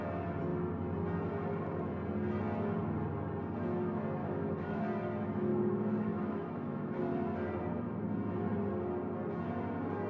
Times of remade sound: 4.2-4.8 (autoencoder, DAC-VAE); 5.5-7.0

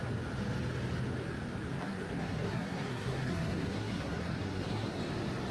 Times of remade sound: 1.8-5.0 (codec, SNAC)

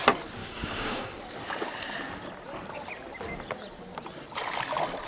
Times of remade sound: 0.4-1.2 (codec, DAC)

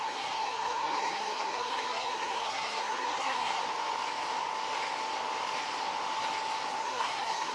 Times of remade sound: 0.0-3.6 (codec, SNAC); 6.8-7.5

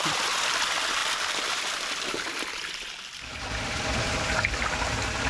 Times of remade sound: 1.0-4.2 (vocoder, BigVGAN v2)

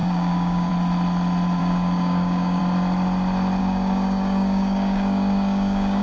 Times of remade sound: 0.0-0.7 (codec, DAC); 1.6-2.6; 3.6-6.0

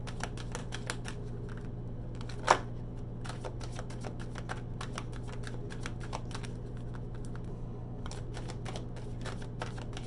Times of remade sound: 7.5-8.1 (codec, HILCodec)